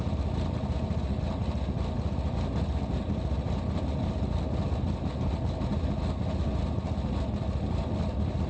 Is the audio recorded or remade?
recorded